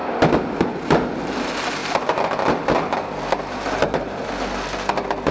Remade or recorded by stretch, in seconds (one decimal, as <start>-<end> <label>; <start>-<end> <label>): 0.0-5.3 recorded